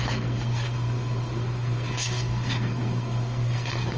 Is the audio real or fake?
fake